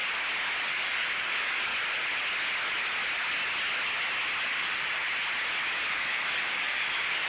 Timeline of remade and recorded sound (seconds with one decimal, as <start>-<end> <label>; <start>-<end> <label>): 0.0-0.7 recorded; 0.7-1.7 remade; 1.7-4.5 recorded; 4.5-5.0 remade; 5.0-5.9 recorded; 5.9-7.3 remade